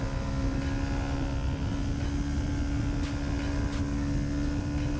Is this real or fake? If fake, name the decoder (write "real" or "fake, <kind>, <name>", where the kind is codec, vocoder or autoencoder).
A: real